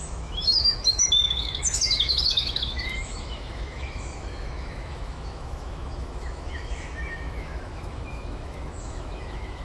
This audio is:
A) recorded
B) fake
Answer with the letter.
B